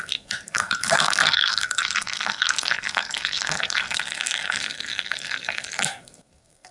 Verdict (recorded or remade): remade